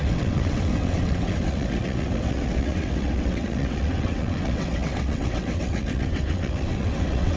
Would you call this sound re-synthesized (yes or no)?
yes